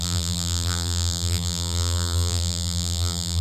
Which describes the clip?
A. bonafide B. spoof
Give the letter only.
B